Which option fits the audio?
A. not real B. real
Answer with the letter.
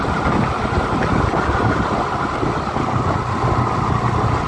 B